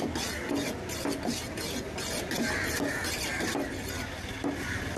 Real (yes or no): yes